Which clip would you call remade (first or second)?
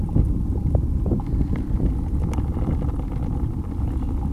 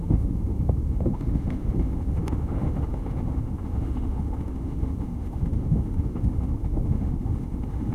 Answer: second